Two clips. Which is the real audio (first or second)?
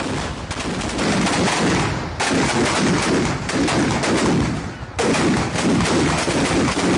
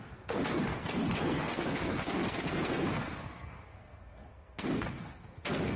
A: first